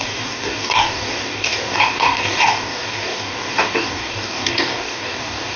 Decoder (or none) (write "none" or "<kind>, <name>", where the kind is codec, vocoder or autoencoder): codec, DAC